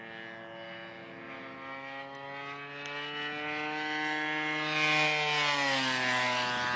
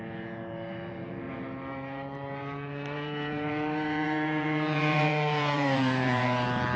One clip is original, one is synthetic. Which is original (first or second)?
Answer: first